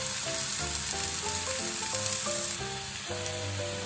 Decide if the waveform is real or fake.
real